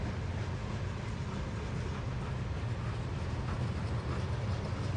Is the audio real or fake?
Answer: real